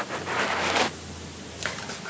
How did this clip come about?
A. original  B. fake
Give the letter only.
A